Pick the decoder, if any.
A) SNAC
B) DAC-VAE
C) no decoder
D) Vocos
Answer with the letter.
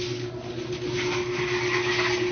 C